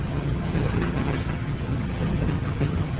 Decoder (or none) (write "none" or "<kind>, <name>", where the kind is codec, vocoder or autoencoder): vocoder, HiFi-GAN